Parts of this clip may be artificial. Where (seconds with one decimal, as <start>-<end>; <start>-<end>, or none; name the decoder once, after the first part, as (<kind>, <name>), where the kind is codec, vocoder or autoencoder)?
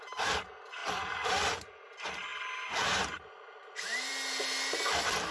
none